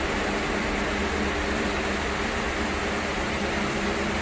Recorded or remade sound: recorded